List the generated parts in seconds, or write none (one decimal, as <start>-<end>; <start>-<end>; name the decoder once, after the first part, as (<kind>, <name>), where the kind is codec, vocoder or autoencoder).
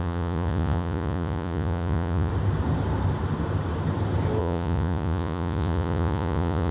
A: 0.0-2.3 (vocoder, Vocos); 4.4-6.7